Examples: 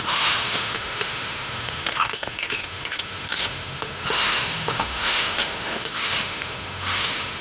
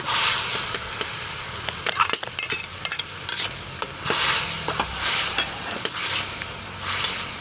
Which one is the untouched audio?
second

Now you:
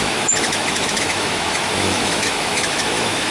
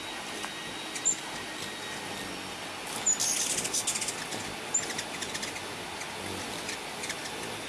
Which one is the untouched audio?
second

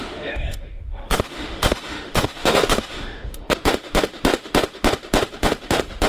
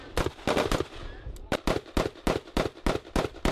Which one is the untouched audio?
second